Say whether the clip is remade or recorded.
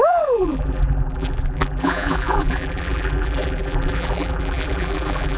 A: remade